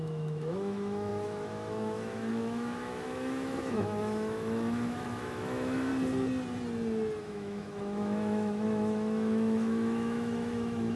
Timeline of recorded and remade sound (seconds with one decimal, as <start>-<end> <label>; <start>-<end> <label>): 0.0-5.9 remade; 5.9-7.2 recorded; 7.2-11.0 remade